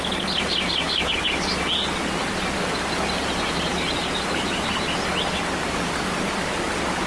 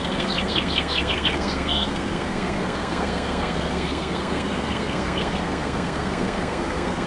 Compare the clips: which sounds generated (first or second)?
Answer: second